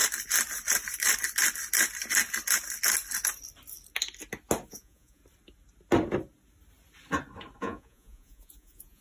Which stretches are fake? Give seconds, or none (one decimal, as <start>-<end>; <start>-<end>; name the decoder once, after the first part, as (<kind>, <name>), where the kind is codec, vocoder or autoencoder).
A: 4.7-5.2 (vocoder, Vocos); 7.6-9.0